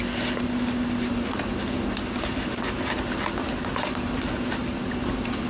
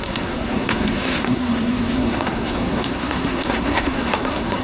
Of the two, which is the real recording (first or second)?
first